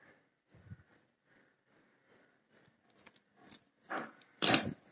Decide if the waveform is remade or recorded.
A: remade